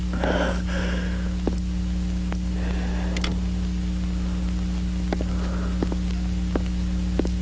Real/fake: real